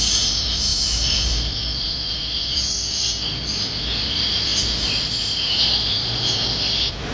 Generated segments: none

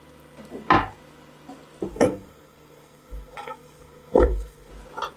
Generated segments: 1.9-4.7 (codec, SNAC)